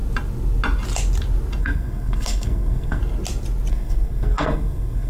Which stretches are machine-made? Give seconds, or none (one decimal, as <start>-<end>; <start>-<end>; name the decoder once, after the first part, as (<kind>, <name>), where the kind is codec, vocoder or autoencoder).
1.6-3.0 (codec, SNAC); 3.7-5.1